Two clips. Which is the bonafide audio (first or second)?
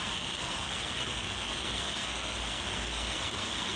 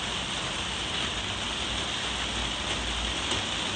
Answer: second